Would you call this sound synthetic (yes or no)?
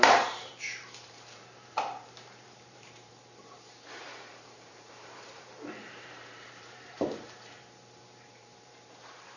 yes